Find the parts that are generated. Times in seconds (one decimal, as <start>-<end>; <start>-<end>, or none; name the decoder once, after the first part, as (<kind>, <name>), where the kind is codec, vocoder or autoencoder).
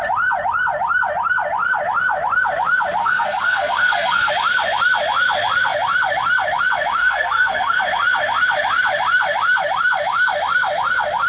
3.0-4.3 (codec, SNAC); 7.0-7.8